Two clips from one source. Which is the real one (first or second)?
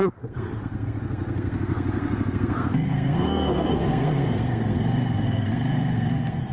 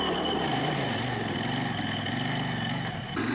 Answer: second